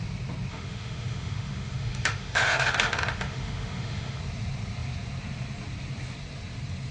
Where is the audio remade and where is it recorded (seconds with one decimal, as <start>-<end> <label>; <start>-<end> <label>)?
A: 0.0-0.5 recorded; 0.5-4.2 remade; 4.2-6.9 recorded

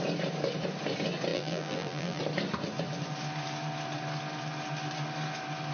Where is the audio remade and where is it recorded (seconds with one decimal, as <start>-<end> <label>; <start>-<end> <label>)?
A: 0.0-1.3 recorded; 1.3-2.2 remade; 2.2-5.7 recorded

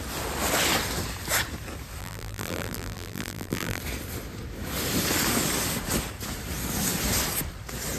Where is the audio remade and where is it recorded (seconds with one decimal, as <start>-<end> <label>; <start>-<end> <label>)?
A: 0.0-2.0 recorded; 2.0-3.8 remade; 3.8-8.0 recorded

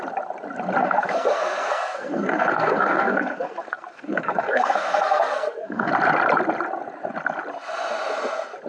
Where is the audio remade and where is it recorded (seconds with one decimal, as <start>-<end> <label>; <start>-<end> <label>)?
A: 0.0-0.8 recorded; 0.8-5.9 remade; 5.9-8.7 recorded

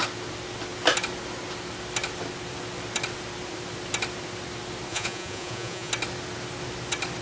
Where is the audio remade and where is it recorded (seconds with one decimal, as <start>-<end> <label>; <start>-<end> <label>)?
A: 0.0-4.9 recorded; 4.9-5.9 remade; 5.9-7.2 recorded

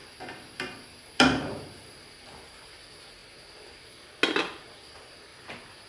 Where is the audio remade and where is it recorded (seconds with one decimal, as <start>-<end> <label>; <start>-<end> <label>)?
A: 0.0-1.0 recorded; 1.0-3.2 remade; 3.2-4.3 recorded; 4.3-5.3 remade; 5.3-5.9 recorded